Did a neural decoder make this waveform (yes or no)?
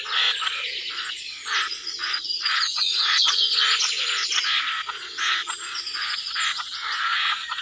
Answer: yes